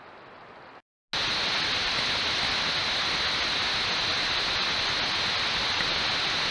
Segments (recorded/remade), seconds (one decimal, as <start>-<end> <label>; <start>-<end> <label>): 0.0-6.5 recorded